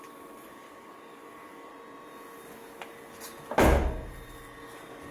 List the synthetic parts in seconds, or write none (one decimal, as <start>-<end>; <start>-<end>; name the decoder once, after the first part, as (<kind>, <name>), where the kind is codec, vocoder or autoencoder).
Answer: 0.0-1.7 (codec, DAC)